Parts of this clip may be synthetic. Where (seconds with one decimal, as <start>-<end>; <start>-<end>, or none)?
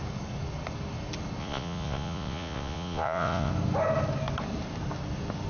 1.4-3.5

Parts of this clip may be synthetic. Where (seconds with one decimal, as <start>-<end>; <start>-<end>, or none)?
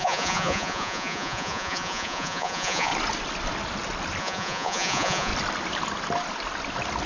0.0-2.9; 4.2-5.3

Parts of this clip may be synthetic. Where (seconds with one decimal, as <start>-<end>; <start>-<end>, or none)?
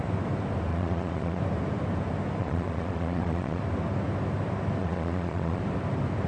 0.7-1.4; 2.4-3.6; 4.8-5.6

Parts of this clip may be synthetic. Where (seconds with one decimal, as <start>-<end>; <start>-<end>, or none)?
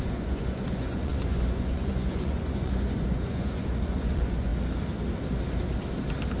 0.0-4.5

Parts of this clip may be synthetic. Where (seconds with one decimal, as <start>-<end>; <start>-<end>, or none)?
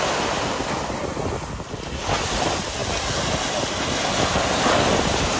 none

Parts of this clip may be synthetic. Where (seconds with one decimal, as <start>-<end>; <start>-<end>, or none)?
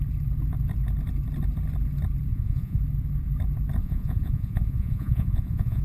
2.3-2.8; 3.8-5.8